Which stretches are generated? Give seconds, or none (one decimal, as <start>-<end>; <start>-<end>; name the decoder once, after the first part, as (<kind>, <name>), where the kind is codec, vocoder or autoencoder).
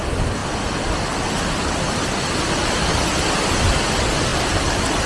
none